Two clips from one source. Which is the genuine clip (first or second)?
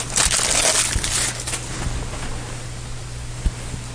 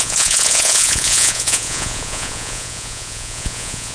first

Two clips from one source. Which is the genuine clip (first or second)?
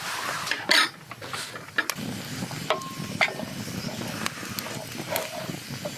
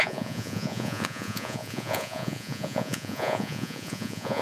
first